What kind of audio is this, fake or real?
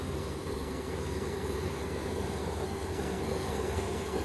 fake